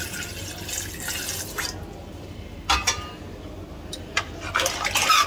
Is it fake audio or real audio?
real